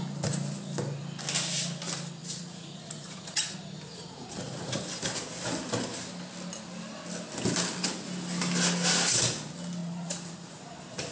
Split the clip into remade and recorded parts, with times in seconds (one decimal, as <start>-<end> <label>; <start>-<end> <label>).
0.0-2.2 recorded; 2.2-3.5 remade; 3.5-3.9 recorded; 3.9-4.8 remade; 4.8-9.8 recorded; 9.8-10.6 remade; 10.6-11.1 recorded